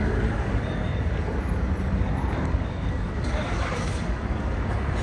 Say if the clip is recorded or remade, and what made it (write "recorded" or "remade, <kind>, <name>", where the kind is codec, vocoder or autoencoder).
remade, codec, DAC